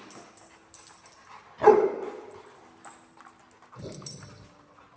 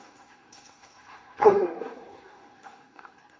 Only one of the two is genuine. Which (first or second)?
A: first